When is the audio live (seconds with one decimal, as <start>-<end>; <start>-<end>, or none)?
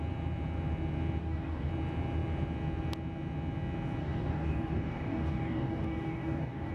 0.0-1.2; 1.7-4.0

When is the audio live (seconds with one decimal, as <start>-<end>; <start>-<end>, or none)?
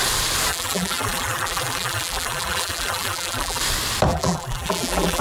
0.0-0.5; 3.6-4.1